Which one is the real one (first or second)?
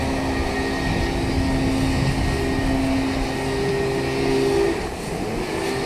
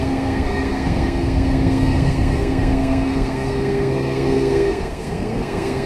first